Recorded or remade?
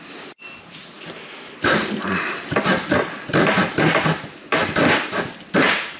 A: recorded